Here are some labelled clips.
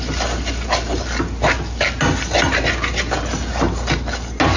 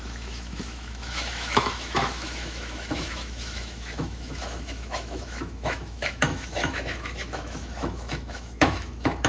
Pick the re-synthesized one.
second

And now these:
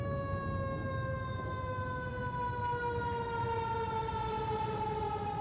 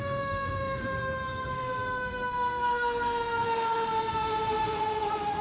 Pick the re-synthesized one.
second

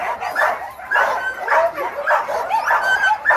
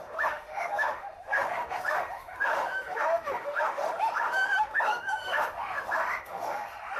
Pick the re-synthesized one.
second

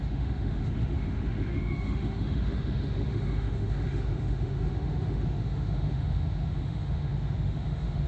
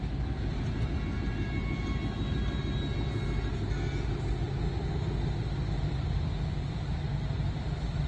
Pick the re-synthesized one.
first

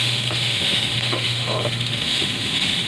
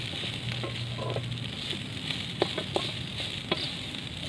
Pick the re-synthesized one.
first